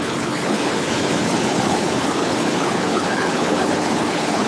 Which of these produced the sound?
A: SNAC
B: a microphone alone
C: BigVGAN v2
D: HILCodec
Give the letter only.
D